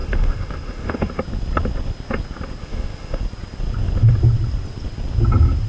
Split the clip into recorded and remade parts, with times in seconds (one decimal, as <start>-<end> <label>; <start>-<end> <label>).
0.0-1.1 remade; 1.1-2.6 recorded; 2.6-3.2 remade; 3.2-5.7 recorded